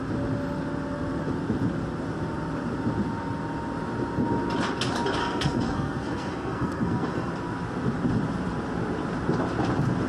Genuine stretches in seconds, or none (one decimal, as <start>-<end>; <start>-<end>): 0.0-5.2; 7.3-10.1